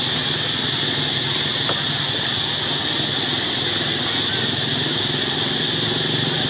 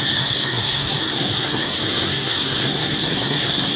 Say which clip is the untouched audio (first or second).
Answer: first